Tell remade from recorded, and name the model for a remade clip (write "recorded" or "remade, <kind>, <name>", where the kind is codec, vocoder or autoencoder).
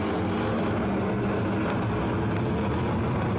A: recorded